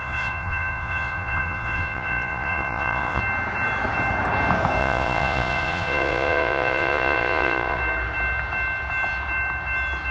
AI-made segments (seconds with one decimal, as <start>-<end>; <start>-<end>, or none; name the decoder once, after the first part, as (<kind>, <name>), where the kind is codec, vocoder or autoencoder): 0.0-3.2 (vocoder, Vocos); 4.8-7.8

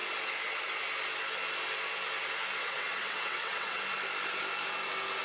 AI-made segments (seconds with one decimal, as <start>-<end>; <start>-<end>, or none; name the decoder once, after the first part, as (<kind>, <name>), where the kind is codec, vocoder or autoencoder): 2.6-3.8 (vocoder, WaveNeXt)

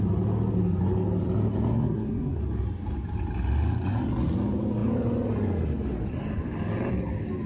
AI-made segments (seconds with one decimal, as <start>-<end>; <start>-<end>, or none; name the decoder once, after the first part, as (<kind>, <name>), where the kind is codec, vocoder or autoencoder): 1.7-2.4 (codec, SNAC)

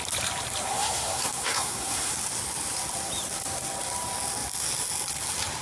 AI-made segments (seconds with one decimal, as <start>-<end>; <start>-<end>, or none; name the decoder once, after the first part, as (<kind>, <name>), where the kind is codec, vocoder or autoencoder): 0.6-2.1 (codec, SNAC)